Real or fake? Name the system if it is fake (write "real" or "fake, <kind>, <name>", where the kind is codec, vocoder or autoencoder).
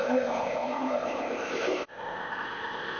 fake, codec, ZipCodec